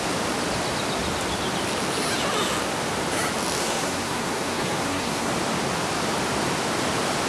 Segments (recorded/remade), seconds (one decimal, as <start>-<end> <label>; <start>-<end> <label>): 0.0-3.6 recorded; 3.6-5.3 remade; 5.3-7.3 recorded